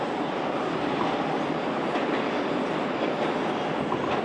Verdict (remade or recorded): recorded